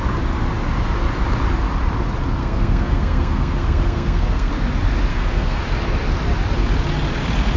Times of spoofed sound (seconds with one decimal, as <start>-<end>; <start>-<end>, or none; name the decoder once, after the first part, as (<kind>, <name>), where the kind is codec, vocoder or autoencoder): 2.4-4.5 (codec, SNAC); 5.1-5.6